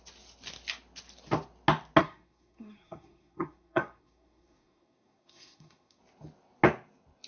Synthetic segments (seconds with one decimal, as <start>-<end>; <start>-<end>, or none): 2.0-6.0